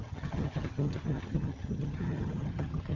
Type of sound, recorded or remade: remade